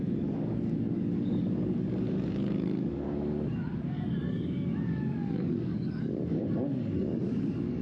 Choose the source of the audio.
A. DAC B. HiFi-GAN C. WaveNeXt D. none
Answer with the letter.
A